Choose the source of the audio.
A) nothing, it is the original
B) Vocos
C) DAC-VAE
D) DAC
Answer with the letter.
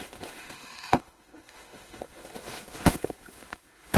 C